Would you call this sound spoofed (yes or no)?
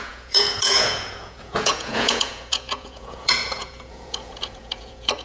yes